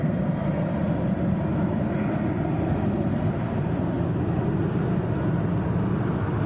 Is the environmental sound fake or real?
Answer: real